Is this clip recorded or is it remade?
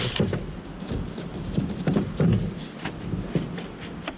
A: recorded